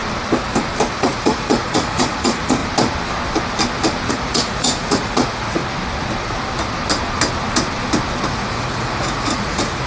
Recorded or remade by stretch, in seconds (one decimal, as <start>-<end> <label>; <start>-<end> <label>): 0.0-0.9 recorded; 0.9-2.6 remade; 2.6-4.1 recorded; 4.1-5.6 remade; 5.6-8.3 recorded; 8.3-9.9 remade